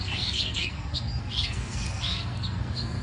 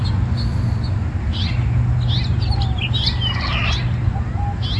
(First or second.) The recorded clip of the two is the second